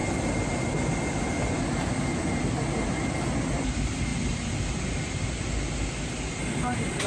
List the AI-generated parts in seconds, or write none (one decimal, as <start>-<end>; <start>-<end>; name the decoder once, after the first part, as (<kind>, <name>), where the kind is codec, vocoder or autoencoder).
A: none